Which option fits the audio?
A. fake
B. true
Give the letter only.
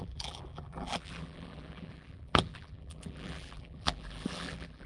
A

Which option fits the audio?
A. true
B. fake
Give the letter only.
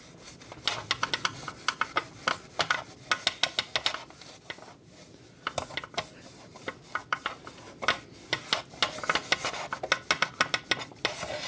A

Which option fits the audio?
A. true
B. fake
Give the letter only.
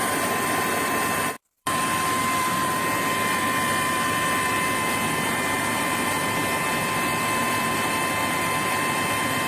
B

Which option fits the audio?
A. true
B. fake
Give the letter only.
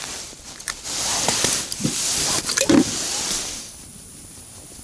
B